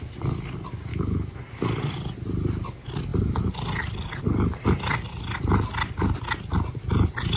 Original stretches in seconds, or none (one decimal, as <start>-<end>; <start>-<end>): 0.0-0.9; 1.4-7.4